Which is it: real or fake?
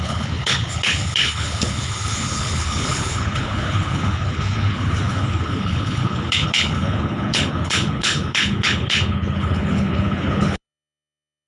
fake